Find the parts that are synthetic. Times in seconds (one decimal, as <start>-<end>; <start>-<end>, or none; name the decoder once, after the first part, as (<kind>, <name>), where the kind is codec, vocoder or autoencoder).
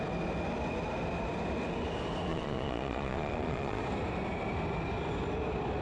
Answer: 2.3-3.8 (vocoder, Vocos)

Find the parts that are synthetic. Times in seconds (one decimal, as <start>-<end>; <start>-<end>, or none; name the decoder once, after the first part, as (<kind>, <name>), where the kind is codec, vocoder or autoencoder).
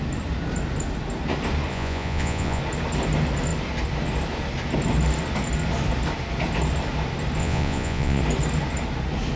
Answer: 1.7-2.6 (vocoder, Vocos); 7.4-8.2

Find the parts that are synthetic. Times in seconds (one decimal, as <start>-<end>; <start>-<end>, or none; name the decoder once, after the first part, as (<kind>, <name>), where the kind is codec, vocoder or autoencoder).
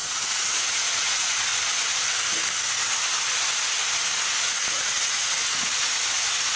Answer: 0.0-1.5 (vocoder, Vocos); 4.4-6.6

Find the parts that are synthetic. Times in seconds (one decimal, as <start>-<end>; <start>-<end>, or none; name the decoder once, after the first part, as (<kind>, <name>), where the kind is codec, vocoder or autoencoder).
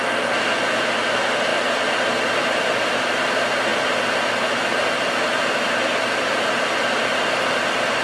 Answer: none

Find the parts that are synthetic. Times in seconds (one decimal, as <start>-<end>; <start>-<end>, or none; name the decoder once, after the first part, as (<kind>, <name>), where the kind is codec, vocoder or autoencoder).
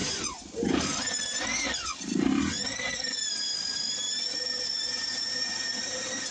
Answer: none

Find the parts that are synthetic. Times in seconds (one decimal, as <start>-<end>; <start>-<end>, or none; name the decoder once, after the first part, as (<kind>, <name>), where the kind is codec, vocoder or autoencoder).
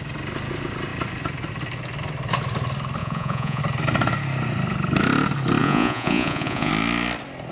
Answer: 3.0-3.6 (vocoder, Vocos); 5.6-6.7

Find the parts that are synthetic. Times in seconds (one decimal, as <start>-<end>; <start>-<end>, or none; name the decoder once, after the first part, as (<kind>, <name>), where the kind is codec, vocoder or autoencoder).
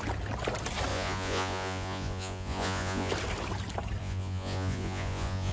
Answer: 0.9-3.1 (vocoder, Vocos); 4.0-5.5